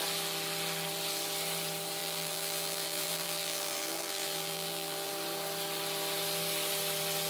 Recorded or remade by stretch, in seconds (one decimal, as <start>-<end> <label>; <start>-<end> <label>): 0.0-2.0 recorded; 2.0-5.1 remade; 5.1-7.3 recorded